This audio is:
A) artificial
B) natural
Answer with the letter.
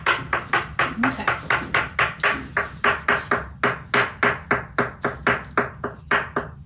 B